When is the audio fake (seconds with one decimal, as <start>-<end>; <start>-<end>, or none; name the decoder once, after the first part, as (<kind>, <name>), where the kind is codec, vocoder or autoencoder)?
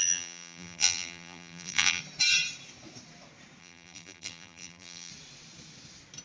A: 0.0-2.0 (vocoder, BigVGAN v2); 3.6-5.1